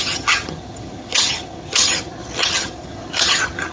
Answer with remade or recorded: remade